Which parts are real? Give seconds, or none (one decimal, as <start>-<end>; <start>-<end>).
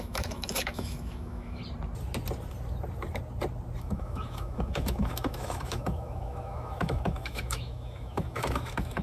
1.6-3.8